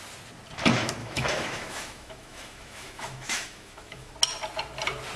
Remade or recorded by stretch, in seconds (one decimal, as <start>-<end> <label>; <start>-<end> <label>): 0.0-1.0 recorded; 1.0-4.1 remade; 4.1-5.2 recorded